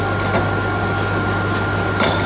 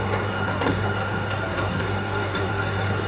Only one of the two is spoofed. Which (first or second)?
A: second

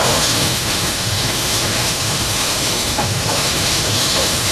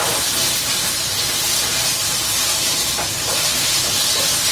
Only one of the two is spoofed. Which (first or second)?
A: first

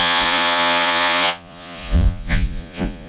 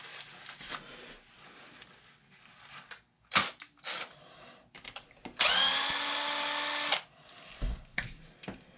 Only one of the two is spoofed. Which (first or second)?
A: first